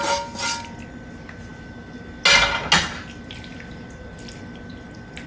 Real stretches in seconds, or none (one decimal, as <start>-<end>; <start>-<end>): 0.0-5.3